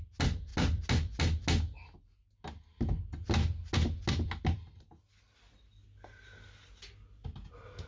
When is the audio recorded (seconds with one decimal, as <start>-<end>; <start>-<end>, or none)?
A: 0.0-7.9